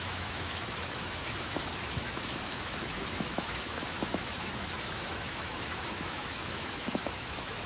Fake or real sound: fake